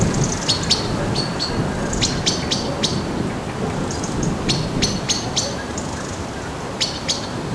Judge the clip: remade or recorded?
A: recorded